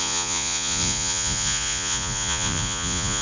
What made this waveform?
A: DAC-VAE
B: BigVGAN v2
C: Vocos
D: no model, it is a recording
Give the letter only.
C